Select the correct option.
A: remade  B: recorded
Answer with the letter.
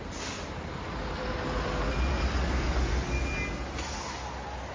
B